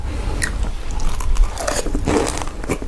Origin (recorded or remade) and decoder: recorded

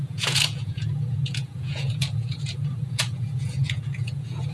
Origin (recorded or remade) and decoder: remade, vocoder, Vocos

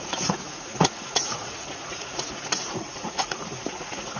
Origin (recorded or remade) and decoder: remade, vocoder, Vocos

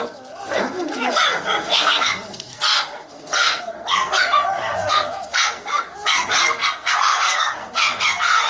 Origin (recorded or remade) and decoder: remade, codec, SNAC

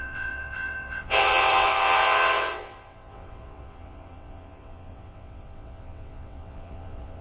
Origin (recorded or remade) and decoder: remade, vocoder, WaveNeXt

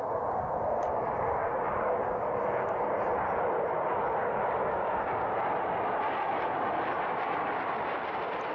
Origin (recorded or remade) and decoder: recorded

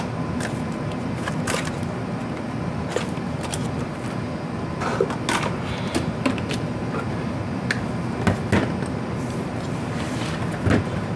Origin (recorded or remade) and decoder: recorded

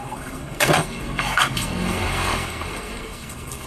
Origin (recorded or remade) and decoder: remade, codec, SNAC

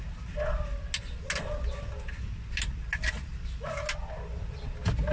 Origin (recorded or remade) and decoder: recorded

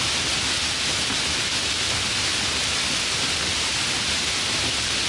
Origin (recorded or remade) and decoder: recorded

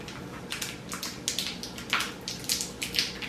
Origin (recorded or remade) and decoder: recorded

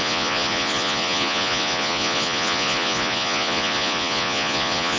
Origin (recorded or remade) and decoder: remade, vocoder, Vocos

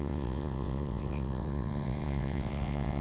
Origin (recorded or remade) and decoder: remade, vocoder, WaveNeXt